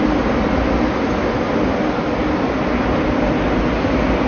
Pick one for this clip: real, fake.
real